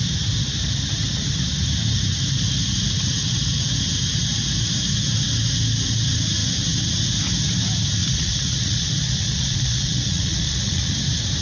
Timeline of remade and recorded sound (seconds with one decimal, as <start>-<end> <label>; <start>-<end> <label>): 0.0-8.0 recorded; 8.0-11.0 remade; 11.0-11.4 recorded